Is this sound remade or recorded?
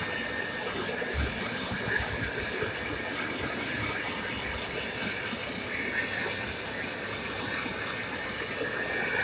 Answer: recorded